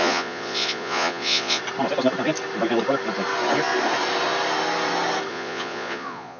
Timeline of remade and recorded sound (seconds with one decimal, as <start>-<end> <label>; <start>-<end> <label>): 0.0-1.6 remade; 1.6-5.3 recorded; 5.3-6.4 remade